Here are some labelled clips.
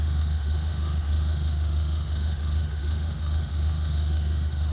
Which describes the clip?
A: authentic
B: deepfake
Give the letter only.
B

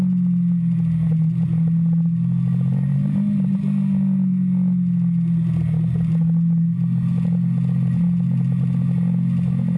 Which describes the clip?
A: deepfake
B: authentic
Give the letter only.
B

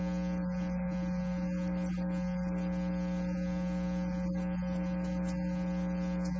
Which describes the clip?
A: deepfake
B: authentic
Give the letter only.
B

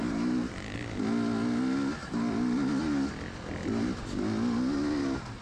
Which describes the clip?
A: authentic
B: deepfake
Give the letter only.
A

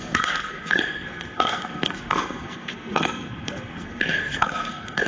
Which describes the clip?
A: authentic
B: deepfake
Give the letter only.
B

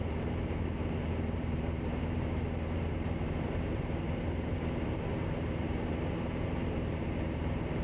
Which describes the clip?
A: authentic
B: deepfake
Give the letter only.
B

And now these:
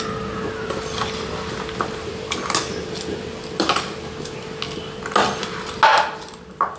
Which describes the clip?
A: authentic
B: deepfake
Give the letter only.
A